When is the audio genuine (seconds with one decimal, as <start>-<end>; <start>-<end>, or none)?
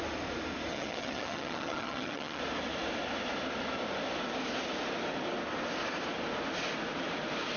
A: 0.0-0.7; 2.4-7.6